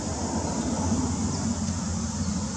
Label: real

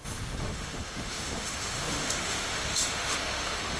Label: fake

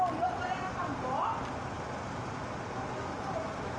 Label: real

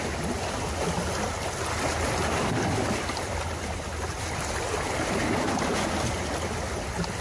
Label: real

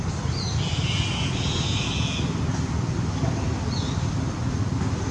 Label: real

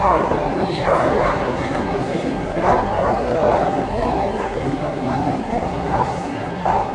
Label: fake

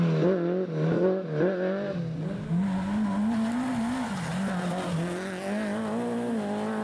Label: real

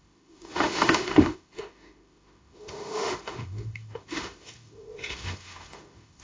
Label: fake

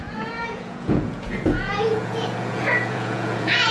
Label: fake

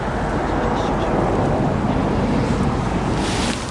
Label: real